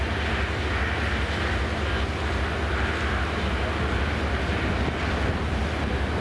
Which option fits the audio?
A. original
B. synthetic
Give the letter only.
A